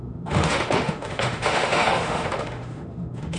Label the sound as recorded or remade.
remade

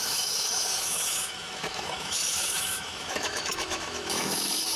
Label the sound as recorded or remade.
remade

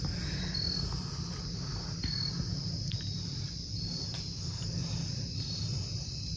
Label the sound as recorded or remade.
recorded